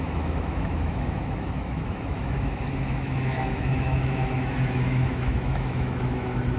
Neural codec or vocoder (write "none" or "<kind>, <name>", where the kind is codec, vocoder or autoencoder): autoencoder, DAC-VAE